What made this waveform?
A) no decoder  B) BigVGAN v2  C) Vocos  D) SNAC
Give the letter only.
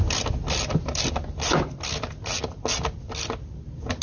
A